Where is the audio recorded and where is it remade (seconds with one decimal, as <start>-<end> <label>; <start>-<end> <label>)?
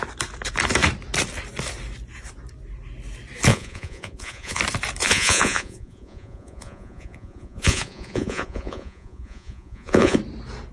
0.0-3.5 recorded; 3.5-4.6 remade; 4.6-5.0 recorded; 5.0-10.2 remade; 10.2-10.7 recorded